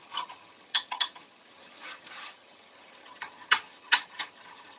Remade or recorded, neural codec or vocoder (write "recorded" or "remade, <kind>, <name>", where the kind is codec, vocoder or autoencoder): remade, vocoder, HiFi-GAN